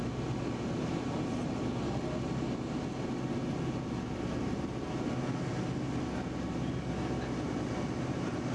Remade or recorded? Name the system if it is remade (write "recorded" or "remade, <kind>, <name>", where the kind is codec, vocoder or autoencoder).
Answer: recorded